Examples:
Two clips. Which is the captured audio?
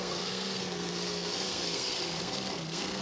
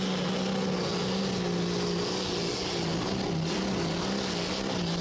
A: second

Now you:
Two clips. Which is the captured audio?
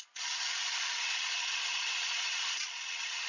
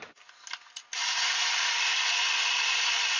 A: second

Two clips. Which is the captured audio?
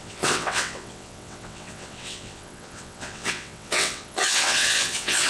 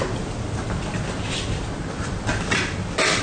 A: second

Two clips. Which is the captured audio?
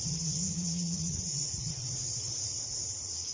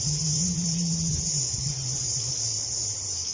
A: second